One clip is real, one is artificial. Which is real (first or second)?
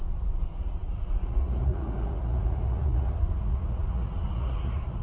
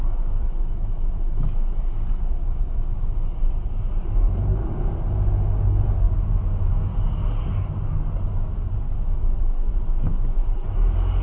second